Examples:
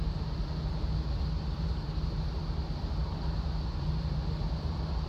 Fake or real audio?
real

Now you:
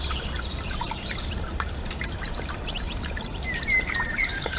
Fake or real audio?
fake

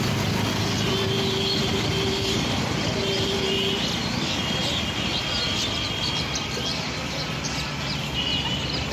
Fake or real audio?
real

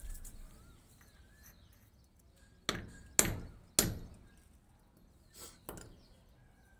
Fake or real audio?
real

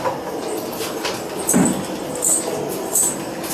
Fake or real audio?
real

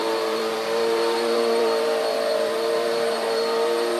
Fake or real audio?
fake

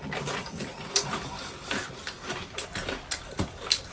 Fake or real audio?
fake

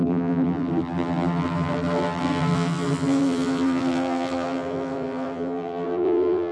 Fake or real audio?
fake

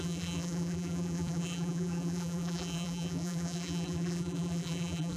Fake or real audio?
fake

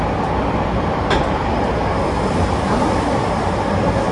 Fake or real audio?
fake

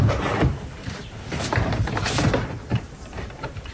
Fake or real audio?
fake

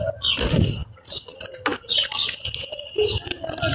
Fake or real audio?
real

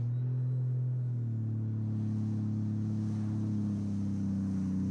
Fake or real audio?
real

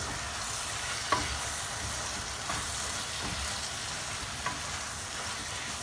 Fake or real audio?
real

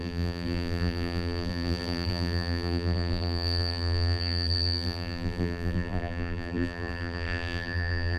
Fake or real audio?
fake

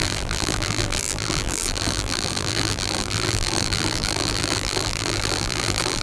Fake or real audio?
fake